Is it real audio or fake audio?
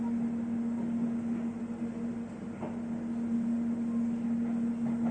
real